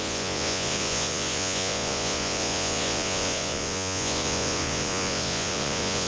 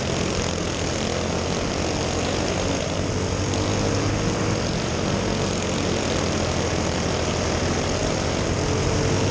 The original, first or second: second